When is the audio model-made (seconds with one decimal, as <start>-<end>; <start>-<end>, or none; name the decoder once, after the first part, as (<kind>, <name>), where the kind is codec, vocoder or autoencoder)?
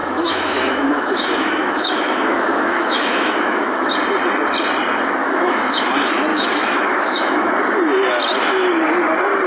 0.0-3.9 (autoencoder, DAC-VAE); 5.2-5.8; 6.3-7.5